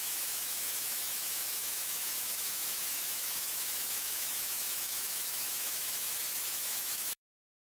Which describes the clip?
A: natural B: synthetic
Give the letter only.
B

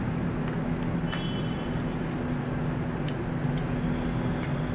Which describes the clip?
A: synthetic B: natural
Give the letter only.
B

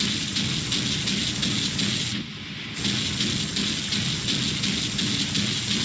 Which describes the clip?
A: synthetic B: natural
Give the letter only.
B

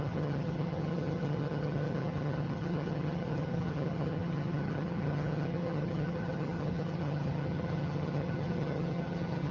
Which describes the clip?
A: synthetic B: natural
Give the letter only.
A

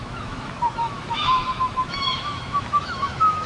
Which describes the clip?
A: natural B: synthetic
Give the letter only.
B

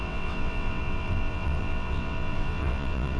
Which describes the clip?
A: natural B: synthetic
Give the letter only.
B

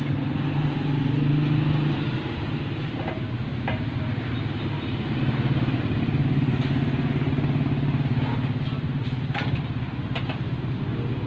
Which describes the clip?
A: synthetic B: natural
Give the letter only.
B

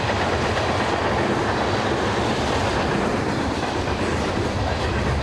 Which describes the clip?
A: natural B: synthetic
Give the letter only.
B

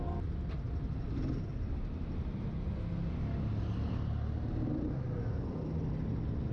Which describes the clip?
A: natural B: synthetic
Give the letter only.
A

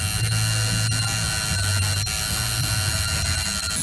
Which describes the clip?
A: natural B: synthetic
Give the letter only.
A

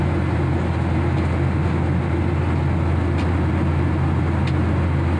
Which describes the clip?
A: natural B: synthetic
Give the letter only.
A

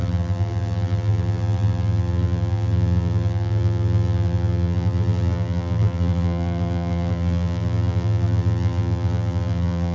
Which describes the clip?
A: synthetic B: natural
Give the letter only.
A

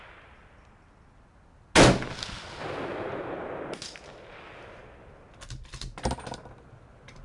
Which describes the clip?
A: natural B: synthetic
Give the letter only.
A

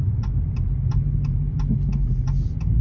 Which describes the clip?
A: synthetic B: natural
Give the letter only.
A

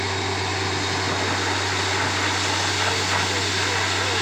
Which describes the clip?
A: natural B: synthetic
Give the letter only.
A